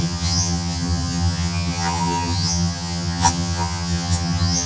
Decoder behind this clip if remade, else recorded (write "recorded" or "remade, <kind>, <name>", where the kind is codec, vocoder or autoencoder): remade, vocoder, HiFi-GAN